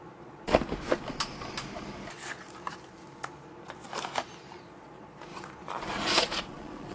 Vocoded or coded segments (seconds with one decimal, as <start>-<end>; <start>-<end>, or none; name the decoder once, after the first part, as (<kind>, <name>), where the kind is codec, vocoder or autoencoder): 0.0-0.5 (vocoder, Vocos); 4.6-5.3; 6.2-6.9